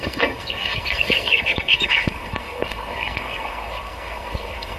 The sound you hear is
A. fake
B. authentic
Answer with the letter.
A